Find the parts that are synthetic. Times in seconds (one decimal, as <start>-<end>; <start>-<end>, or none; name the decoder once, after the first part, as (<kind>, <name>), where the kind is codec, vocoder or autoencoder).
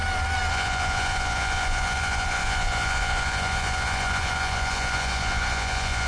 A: 0.5-6.1 (vocoder, Vocos)